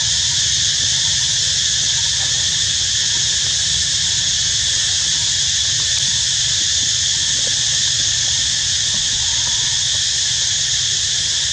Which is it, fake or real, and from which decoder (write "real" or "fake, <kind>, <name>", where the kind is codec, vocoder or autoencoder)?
real